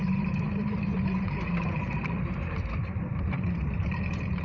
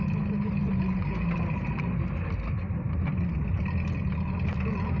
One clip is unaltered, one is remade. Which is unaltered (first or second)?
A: second